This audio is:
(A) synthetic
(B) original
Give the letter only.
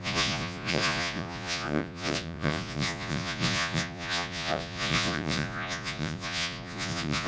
A